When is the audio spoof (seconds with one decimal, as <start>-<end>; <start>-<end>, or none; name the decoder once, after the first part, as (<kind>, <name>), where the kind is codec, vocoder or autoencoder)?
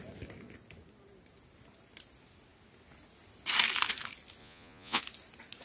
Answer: 4.4-5.0 (vocoder, Vocos)